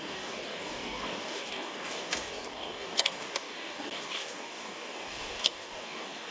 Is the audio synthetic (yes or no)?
yes